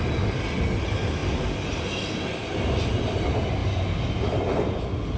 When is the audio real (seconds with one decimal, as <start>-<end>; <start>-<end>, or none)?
0.0-5.2